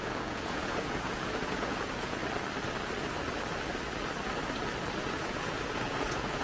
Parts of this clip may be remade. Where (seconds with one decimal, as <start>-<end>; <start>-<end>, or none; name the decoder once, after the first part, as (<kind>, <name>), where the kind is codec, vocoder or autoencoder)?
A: 0.0-2.2 (vocoder, Vocos); 5.1-6.4